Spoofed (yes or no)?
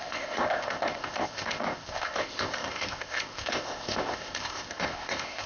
yes